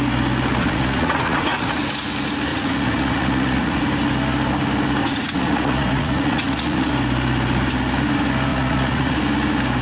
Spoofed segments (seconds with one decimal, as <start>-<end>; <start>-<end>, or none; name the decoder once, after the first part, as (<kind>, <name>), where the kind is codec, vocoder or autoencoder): 0.6-1.8 (vocoder, Vocos); 2.5-3.8; 5.0-6.9; 8.5-9.2